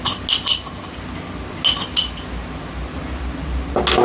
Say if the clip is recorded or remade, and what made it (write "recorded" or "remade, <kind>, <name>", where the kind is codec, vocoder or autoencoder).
recorded